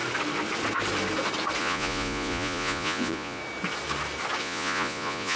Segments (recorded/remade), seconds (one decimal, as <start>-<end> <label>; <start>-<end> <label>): 0.0-1.6 recorded; 1.6-3.4 remade; 3.4-4.4 recorded; 4.4-5.4 remade